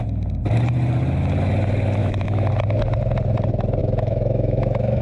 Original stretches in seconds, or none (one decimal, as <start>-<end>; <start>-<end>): 0.0-2.0; 2.5-3.8